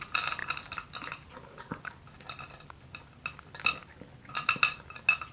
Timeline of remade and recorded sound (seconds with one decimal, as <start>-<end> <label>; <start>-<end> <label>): 0.0-5.3 recorded